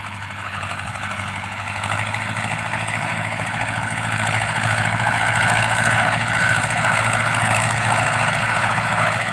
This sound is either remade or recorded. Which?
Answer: remade